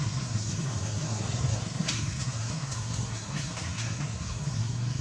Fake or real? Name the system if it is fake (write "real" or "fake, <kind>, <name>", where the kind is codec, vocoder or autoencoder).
fake, codec, SNAC